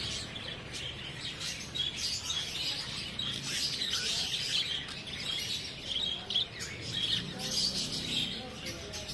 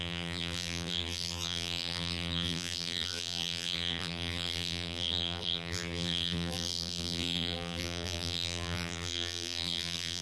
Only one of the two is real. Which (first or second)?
first